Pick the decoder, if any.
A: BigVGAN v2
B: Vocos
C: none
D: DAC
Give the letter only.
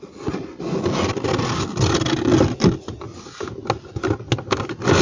C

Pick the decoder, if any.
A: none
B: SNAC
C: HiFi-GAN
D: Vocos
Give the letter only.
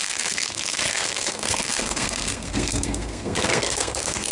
B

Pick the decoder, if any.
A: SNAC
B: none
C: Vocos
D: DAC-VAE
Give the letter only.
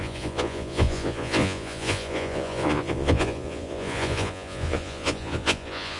C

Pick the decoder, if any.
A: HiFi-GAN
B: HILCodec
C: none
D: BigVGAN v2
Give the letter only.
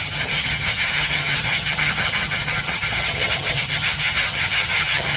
A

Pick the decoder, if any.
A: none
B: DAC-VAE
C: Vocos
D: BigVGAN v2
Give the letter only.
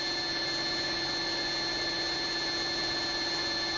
A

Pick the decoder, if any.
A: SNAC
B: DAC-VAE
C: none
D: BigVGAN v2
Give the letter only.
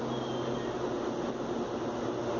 C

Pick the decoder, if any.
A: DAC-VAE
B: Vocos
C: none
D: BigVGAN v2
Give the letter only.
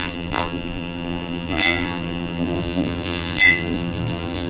D